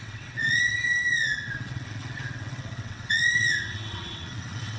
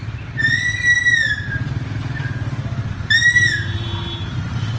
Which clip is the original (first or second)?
second